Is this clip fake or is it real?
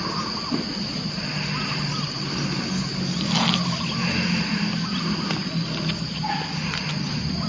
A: real